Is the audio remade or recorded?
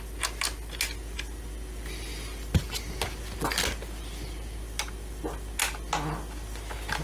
recorded